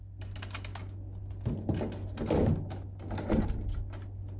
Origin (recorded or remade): recorded